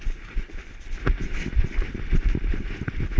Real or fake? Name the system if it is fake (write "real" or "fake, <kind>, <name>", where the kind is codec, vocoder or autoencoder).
real